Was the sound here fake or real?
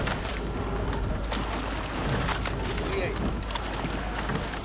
real